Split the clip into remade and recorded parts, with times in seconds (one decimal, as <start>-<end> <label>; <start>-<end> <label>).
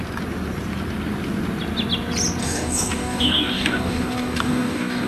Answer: 0.0-2.4 recorded; 2.4-5.1 remade